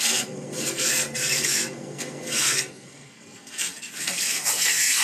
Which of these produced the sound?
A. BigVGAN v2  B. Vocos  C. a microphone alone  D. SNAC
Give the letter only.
D